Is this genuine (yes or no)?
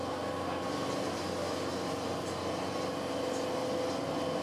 yes